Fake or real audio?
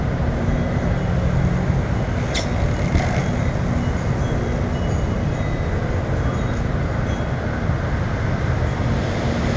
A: real